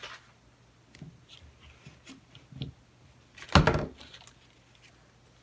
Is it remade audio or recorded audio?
recorded